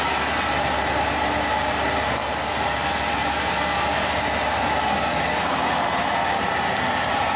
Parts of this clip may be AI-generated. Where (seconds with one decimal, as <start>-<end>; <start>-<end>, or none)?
none